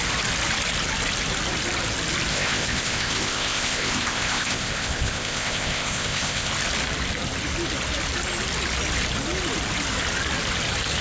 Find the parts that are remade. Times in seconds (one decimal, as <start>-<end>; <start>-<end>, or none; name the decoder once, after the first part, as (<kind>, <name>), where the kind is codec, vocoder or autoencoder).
2.3-6.5 (codec, ZipCodec)